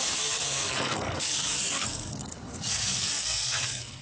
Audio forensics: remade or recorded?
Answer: remade